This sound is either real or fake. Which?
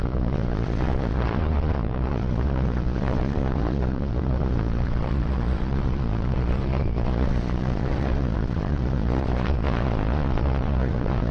fake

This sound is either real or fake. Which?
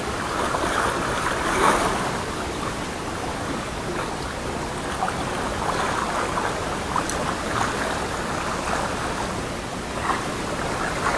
real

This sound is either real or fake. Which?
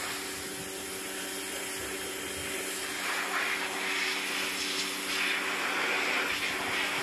real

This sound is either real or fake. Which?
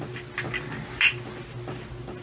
real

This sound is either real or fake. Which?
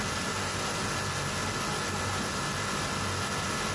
real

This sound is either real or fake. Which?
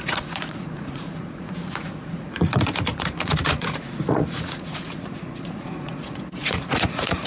fake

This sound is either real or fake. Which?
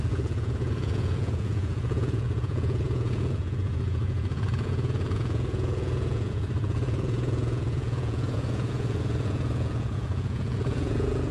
fake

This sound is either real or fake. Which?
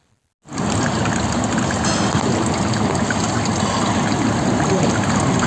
real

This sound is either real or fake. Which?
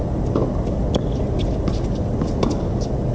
real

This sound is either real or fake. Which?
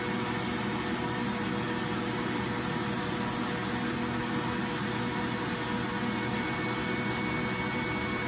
real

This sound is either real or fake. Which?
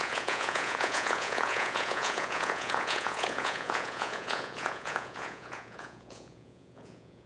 fake